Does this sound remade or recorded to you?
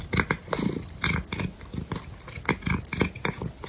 recorded